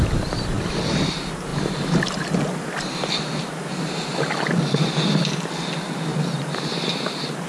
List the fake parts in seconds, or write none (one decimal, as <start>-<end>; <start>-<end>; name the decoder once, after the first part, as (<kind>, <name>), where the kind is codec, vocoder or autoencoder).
none